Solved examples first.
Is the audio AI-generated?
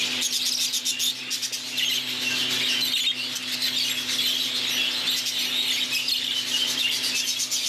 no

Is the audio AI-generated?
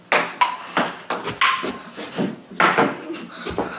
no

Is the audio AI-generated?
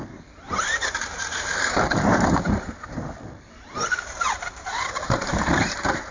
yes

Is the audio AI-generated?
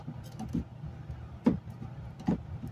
no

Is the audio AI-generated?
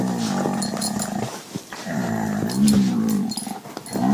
no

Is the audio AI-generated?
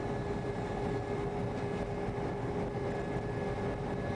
no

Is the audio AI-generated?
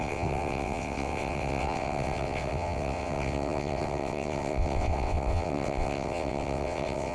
yes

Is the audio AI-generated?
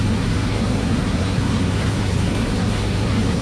yes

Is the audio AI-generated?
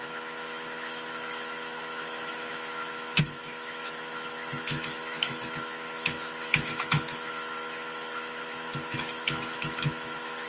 yes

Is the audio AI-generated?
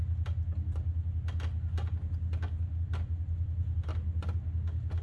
no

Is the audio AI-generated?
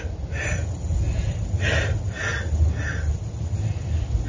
no